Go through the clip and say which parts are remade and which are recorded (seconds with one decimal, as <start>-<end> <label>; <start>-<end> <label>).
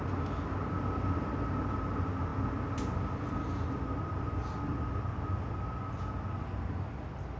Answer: 0.0-7.4 recorded